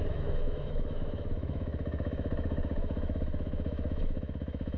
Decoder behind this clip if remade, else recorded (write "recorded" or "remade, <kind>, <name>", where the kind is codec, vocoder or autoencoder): remade, autoencoder, DAC-VAE